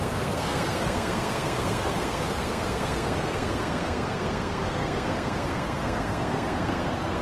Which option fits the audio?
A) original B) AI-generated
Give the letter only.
B